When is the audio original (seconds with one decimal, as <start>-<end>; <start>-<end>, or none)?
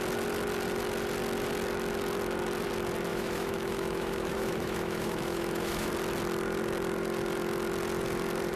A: 0.0-3.1; 5.9-8.6